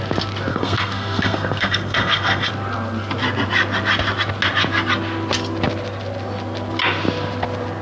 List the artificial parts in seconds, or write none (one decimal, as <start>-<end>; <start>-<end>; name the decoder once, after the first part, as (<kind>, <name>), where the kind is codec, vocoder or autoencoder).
0.5-2.5 (codec, SNAC)